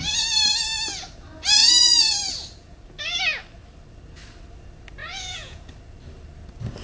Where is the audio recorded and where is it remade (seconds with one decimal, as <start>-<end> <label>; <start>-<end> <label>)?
0.0-5.0 recorded; 5.0-5.6 remade; 5.6-6.8 recorded